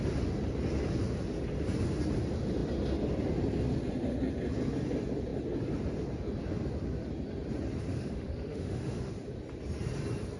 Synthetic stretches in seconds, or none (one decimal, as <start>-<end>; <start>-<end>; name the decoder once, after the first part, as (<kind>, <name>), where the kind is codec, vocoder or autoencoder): 7.9-9.1 (autoencoder, DAC-VAE)